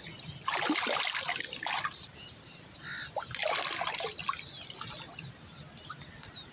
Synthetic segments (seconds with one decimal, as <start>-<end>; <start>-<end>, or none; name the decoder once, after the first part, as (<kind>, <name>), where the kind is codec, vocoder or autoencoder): 3.4-4.2 (vocoder, BigVGAN v2)